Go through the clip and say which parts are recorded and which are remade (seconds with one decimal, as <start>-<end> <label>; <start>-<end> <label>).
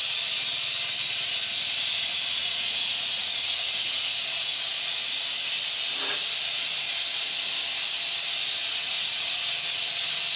0.0-2.4 recorded; 2.4-5.2 remade; 5.2-8.6 recorded; 8.6-9.4 remade; 9.4-10.4 recorded